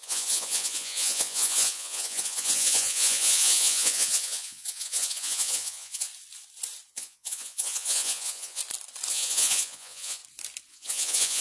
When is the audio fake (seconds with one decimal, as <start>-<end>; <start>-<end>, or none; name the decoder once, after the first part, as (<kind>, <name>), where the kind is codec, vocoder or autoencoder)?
0.0-6.1 (vocoder, Vocos); 6.9-8.6; 9.1-10.2; 10.7-11.4